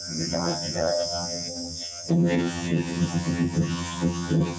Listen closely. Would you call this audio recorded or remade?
remade